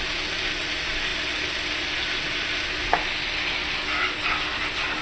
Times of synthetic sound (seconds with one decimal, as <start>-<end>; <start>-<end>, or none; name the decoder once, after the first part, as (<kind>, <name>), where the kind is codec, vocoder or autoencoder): none